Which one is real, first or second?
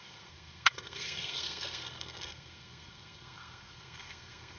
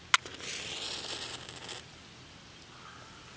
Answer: second